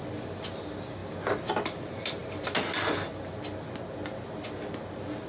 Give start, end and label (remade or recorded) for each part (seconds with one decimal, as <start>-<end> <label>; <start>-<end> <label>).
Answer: 0.0-5.3 recorded